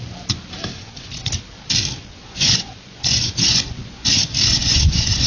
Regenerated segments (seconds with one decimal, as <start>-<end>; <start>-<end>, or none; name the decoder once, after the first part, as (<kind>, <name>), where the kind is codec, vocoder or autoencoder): 0.7-1.3 (vocoder, Vocos); 2.0-5.3